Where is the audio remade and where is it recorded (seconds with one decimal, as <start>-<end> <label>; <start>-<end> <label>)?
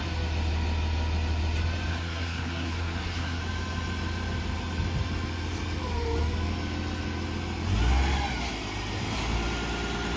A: 0.0-1.9 recorded; 1.9-3.4 remade; 3.4-10.2 recorded